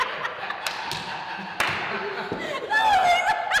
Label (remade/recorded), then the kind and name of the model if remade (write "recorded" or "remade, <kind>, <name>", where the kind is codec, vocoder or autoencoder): recorded